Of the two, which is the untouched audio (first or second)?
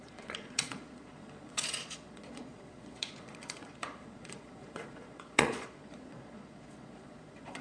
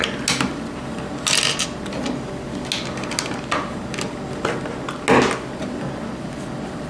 second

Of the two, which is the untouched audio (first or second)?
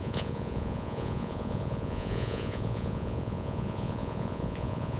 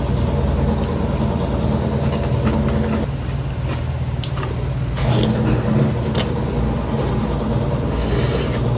second